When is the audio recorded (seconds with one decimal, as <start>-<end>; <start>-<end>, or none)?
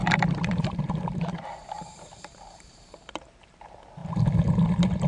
3.1-5.1